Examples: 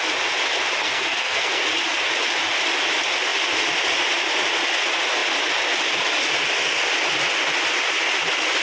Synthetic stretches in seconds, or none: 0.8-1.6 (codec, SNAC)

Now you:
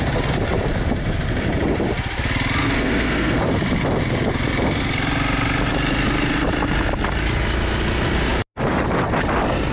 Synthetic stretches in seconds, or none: 2.6-3.4 (codec, SNAC)

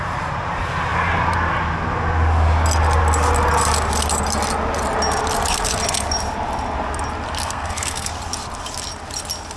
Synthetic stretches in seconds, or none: 7.4-8.1 (codec, SNAC)

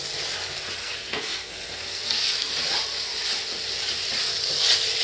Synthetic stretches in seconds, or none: 0.8-2.5 (codec, SNAC)

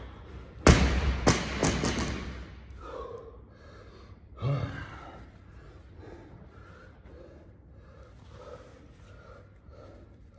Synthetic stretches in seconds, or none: none

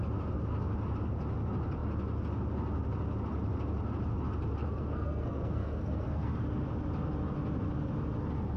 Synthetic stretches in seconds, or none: 4.6-6.3 (codec, SNAC)